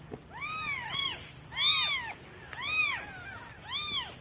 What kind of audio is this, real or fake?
real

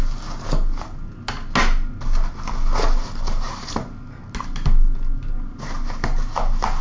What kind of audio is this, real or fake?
real